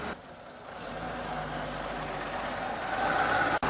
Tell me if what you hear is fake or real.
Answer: real